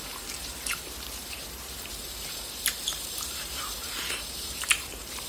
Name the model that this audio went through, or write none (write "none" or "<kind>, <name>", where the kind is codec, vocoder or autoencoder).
vocoder, BigVGAN v2